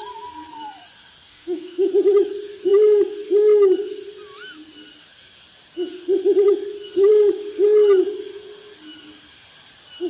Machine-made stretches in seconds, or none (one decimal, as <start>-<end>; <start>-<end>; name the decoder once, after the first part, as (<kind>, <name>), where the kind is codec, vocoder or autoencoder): 1.3-1.9 (autoencoder, DAC-VAE)